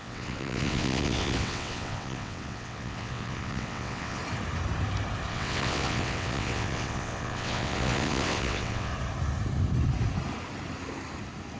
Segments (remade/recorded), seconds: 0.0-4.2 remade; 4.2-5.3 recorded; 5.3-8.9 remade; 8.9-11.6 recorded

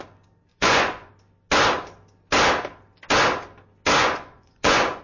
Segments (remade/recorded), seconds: 0.0-0.5 recorded; 0.5-1.1 remade; 1.1-4.0 recorded; 4.0-5.0 remade

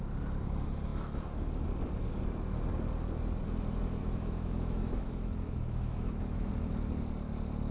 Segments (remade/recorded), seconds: 0.0-4.0 recorded; 4.0-6.5 remade; 6.5-7.7 recorded

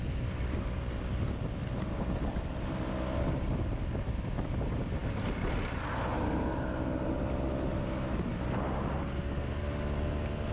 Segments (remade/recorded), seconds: 0.0-10.5 recorded

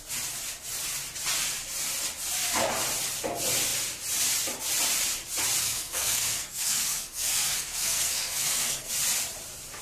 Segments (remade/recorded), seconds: 0.0-5.6 recorded; 5.6-8.9 remade; 8.9-9.8 recorded

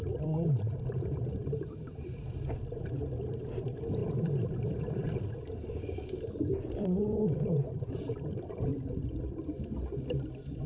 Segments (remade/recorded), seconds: 0.0-8.7 remade; 8.7-9.6 recorded; 9.6-10.7 remade

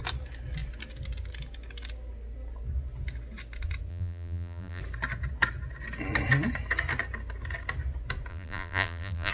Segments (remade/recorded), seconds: 0.0-3.9 recorded; 3.9-4.8 remade; 4.8-8.3 recorded; 8.3-9.3 remade